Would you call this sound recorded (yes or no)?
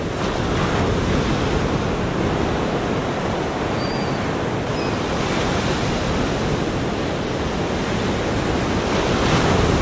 yes